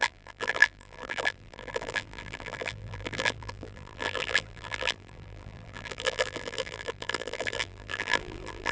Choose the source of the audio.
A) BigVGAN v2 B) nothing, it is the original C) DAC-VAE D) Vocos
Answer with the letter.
A